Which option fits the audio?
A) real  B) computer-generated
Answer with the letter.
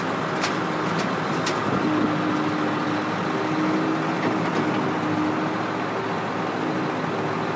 A